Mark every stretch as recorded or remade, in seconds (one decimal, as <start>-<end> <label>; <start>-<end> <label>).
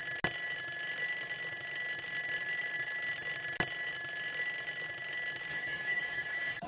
0.0-5.5 recorded; 5.5-6.7 remade